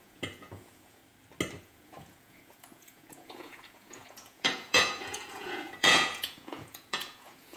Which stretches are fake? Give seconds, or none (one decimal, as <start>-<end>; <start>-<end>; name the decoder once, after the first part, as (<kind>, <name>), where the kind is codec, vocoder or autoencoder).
0.0-1.0 (vocoder, Vocos); 1.6-7.6